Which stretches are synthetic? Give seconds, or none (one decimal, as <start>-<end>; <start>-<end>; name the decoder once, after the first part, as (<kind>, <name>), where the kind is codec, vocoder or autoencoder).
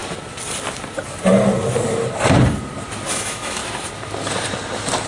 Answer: 3.1-3.6 (autoencoder, DAC-VAE)